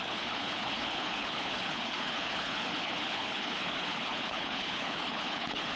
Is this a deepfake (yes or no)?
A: yes